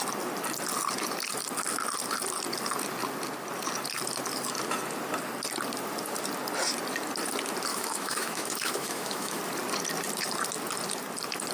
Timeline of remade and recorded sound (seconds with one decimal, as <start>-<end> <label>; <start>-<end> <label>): 0.0-7.7 recorded; 7.7-9.4 remade; 9.4-11.5 recorded